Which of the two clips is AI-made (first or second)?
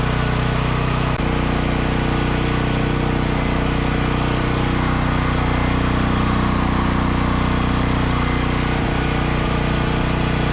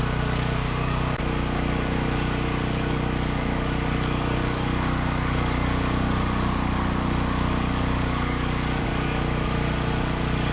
second